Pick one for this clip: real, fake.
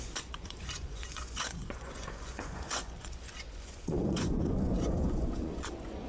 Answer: fake